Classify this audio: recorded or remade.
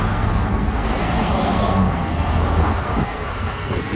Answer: remade